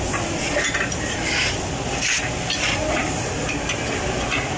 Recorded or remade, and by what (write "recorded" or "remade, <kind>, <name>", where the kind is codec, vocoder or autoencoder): recorded